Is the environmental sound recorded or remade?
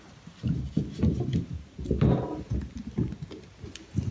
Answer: recorded